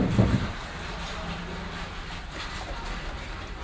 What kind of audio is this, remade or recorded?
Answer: recorded